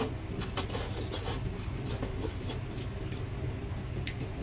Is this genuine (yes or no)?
yes